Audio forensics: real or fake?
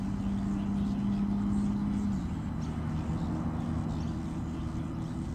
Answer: real